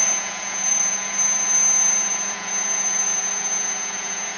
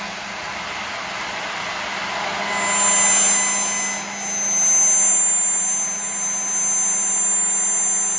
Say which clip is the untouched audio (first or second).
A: second